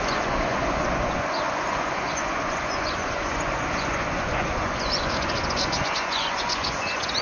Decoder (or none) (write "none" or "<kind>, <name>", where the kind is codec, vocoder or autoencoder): vocoder, Vocos